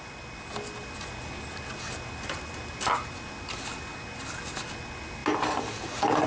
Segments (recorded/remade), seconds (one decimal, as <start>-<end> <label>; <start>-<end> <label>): 0.0-6.3 recorded